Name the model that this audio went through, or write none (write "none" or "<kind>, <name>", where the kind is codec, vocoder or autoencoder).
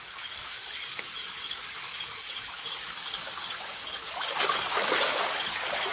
codec, DAC